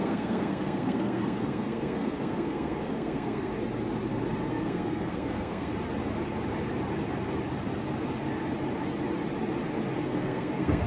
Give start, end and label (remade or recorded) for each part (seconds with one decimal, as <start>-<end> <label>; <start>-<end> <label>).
0.0-3.5 remade; 3.5-4.5 recorded; 4.5-5.7 remade; 5.7-10.0 recorded; 10.0-10.9 remade

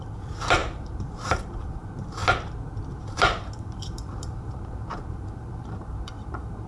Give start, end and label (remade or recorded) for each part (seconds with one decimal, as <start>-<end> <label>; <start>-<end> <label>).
0.0-2.2 remade; 2.2-3.0 recorded; 3.0-6.7 remade